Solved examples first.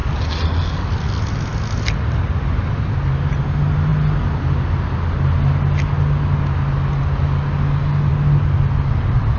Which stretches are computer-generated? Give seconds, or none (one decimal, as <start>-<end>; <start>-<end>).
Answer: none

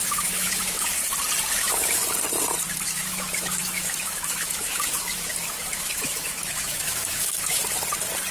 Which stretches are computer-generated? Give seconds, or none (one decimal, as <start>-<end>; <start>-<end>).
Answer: 0.0-1.0; 1.5-2.0; 2.7-7.6

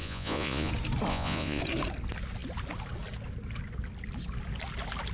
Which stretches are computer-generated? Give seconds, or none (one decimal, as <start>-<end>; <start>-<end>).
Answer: 0.0-0.7; 1.1-1.6

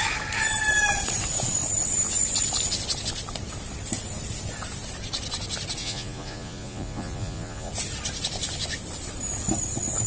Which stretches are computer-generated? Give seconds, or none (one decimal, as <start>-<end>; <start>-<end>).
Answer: 5.8-7.7

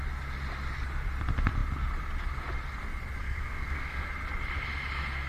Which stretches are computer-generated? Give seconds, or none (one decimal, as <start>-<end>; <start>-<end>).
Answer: 3.2-4.1

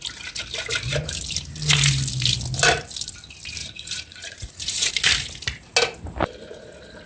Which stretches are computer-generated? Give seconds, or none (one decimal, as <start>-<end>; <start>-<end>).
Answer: 3.6-4.9

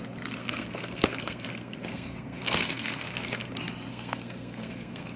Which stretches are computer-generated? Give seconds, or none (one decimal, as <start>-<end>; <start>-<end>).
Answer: 0.4-3.5; 3.9-5.2